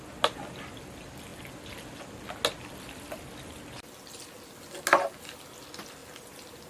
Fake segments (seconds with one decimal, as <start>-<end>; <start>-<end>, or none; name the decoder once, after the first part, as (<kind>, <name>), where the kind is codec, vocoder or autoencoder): none